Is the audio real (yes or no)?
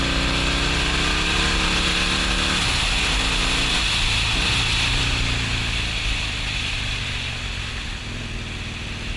yes